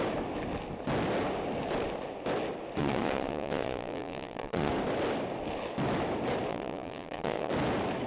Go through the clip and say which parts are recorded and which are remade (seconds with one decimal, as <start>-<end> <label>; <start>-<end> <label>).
0.0-2.8 recorded; 2.8-4.7 remade; 4.7-6.5 recorded; 6.5-7.5 remade; 7.5-8.1 recorded